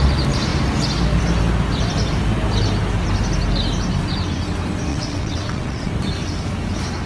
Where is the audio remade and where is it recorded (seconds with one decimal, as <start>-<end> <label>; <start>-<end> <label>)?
0.0-4.9 recorded; 4.9-5.9 remade; 5.9-7.1 recorded